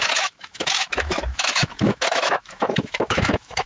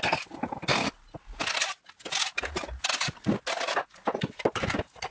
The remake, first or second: first